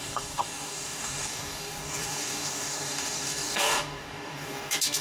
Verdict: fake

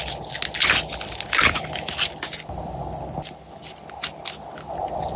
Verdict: real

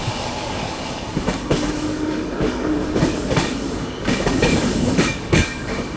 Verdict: fake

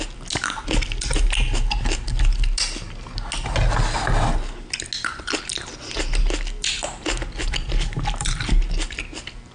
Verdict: real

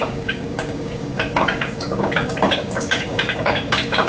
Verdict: fake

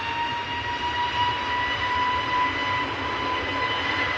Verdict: real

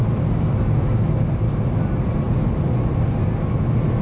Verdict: real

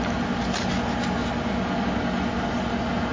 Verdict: real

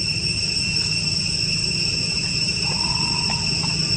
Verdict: real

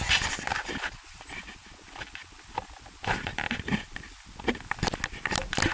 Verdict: real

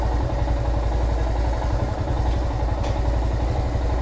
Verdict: real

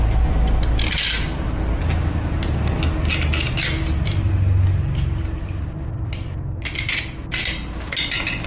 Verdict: real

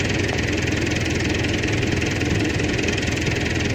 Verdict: real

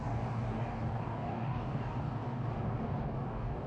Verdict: fake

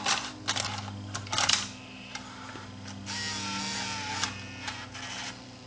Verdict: real